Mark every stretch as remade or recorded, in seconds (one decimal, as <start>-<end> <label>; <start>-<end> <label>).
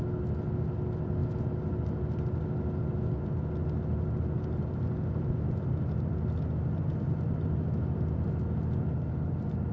0.0-9.7 recorded